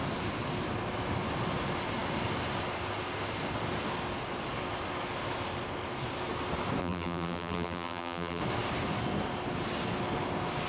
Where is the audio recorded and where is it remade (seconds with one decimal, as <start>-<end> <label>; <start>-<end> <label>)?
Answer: 0.0-6.8 recorded; 6.8-8.4 remade; 8.4-10.7 recorded